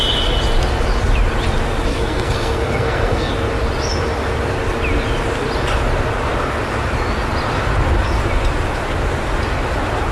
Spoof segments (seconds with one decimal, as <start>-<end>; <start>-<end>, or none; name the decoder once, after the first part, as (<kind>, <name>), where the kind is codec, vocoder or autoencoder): 1.9-3.3 (codec, SNAC)